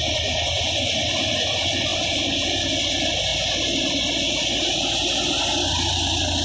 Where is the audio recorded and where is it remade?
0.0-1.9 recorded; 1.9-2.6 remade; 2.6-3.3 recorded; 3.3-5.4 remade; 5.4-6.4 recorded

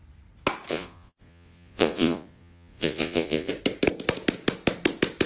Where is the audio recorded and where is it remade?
0.0-0.7 recorded; 0.7-3.5 remade; 3.5-5.3 recorded

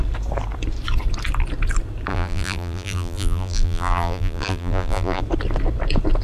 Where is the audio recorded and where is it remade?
0.0-2.1 recorded; 2.1-5.2 remade; 5.2-6.2 recorded

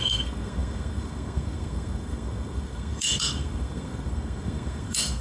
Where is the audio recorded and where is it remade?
0.0-5.2 remade

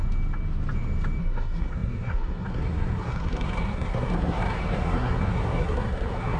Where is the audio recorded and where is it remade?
0.0-1.2 recorded; 1.2-6.4 remade

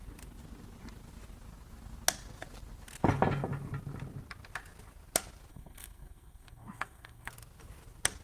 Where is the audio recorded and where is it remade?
0.0-5.5 recorded; 5.5-7.3 remade; 7.3-8.2 recorded

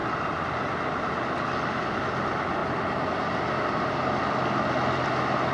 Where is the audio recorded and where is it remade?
0.0-1.1 remade; 1.1-5.5 recorded

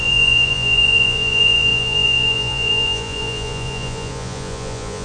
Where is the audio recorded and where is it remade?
0.0-5.0 remade